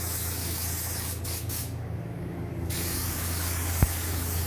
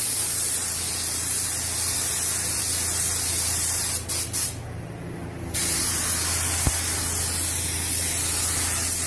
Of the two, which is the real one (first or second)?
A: second